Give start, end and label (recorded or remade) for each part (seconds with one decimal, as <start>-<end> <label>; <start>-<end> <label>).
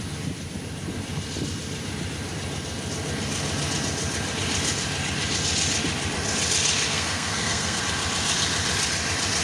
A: 0.0-6.9 recorded; 6.9-7.8 remade; 7.8-9.4 recorded